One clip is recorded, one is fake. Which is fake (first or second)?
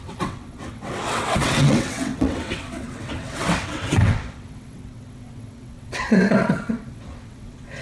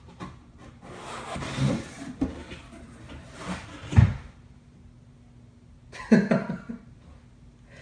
first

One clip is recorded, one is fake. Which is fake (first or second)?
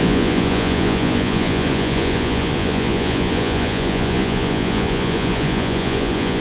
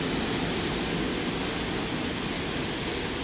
first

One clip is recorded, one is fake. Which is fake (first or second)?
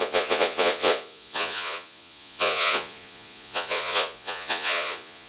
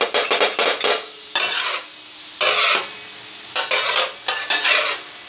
first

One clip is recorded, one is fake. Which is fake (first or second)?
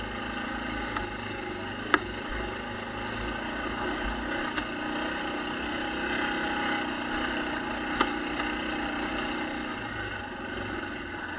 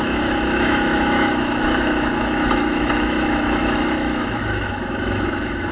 second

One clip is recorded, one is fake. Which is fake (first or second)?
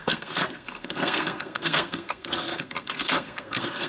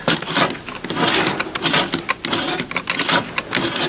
first